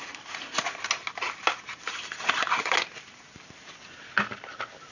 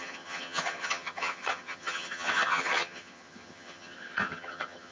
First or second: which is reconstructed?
second